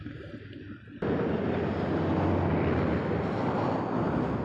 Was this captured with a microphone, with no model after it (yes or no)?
yes